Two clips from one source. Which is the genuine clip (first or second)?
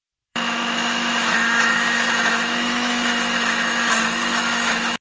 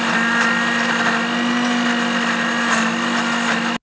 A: second